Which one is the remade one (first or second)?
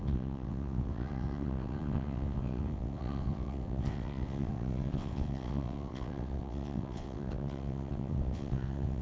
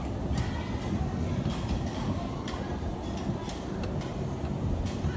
first